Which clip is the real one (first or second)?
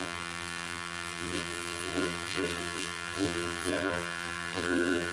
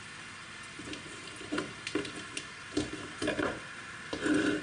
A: second